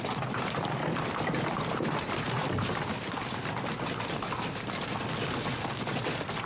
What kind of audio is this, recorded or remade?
recorded